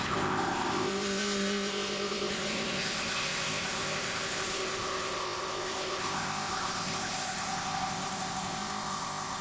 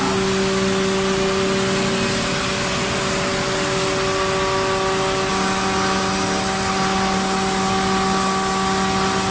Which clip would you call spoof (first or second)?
first